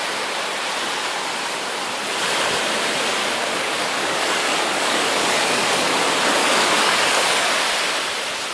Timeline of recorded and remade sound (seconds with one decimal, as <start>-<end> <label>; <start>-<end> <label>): 0.0-3.2 recorded; 3.2-5.9 remade; 5.9-6.4 recorded; 6.4-7.5 remade; 7.5-8.5 recorded